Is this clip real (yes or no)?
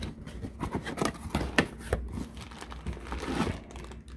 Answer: yes